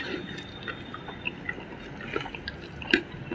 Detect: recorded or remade recorded